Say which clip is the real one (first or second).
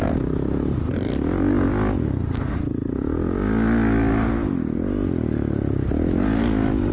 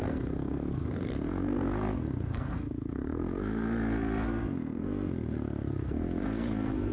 first